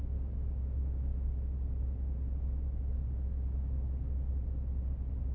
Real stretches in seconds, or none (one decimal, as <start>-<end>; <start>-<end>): 0.0-5.3

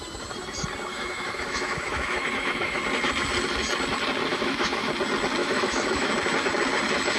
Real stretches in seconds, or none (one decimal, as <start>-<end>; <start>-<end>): 0.0-0.9; 2.8-4.3; 4.9-5.4; 6.1-7.2

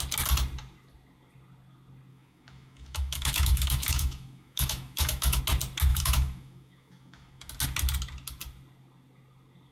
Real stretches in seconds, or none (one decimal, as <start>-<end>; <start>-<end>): 0.0-2.1; 5.4-5.9; 7.5-9.7